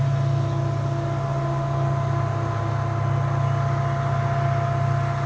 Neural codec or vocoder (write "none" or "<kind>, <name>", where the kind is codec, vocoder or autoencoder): none